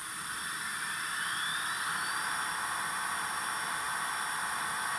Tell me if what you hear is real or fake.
real